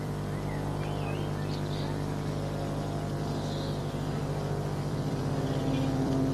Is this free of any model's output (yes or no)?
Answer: no